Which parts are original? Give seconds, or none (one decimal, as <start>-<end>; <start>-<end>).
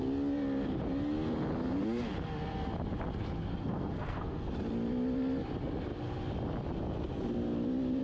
0.0-3.5; 4.5-8.0